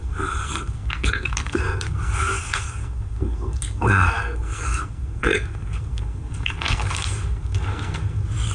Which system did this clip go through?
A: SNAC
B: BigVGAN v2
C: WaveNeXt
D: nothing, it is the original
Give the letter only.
A